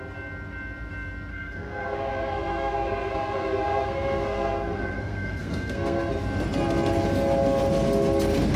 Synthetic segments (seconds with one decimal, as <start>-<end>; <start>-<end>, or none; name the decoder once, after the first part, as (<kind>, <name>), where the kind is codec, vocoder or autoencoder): 1.3-6.1 (codec, SNAC)